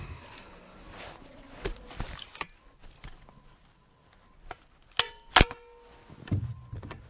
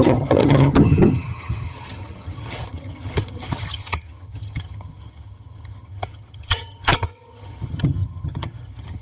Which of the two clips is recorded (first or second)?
first